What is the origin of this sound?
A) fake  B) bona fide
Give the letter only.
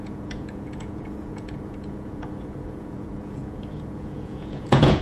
A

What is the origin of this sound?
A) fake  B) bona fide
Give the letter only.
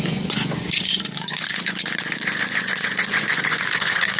A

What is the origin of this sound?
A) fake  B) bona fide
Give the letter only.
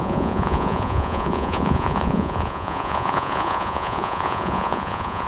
A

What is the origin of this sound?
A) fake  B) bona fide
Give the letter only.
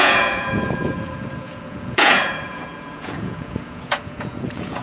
A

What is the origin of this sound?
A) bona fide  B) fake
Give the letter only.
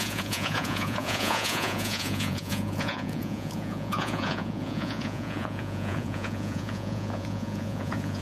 B